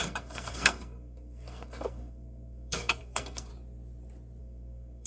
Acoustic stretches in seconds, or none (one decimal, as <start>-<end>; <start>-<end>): 3.5-4.4